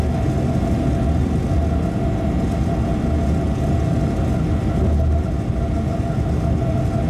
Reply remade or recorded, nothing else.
recorded